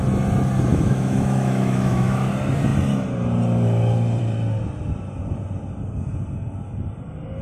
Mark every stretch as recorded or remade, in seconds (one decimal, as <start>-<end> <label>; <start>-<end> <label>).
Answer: 0.0-0.7 recorded; 0.7-2.3 remade; 2.3-7.4 recorded

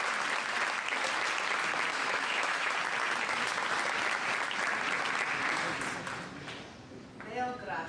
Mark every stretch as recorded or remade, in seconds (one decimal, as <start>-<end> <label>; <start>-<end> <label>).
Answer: 0.0-1.9 recorded; 1.9-2.7 remade; 2.7-7.9 recorded

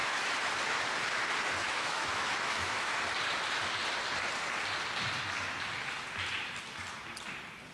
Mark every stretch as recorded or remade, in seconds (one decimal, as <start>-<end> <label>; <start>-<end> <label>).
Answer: 0.0-0.5 remade; 0.5-1.6 recorded; 1.6-3.0 remade; 3.0-7.7 recorded

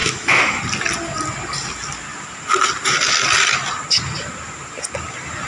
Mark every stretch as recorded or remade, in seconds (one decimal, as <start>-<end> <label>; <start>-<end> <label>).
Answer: 0.0-0.6 remade; 0.6-5.5 recorded

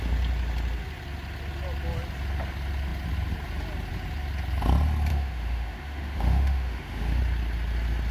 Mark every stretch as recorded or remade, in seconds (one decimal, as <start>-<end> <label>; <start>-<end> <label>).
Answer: 0.0-5.1 recorded; 5.1-7.2 remade; 7.2-8.1 recorded

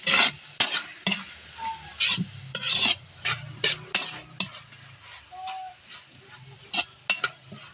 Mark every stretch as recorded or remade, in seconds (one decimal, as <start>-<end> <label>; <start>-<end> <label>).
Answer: 0.0-7.7 recorded